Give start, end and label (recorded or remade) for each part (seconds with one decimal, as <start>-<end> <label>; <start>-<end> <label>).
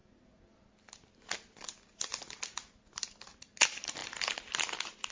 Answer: 0.0-5.1 recorded